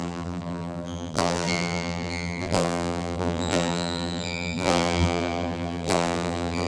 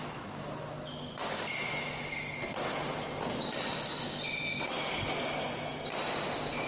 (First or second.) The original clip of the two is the second